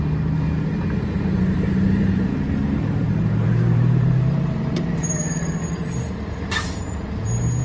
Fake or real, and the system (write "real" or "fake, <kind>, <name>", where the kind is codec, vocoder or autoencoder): fake, vocoder, BigVGAN v2